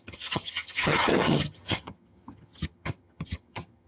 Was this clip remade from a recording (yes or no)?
yes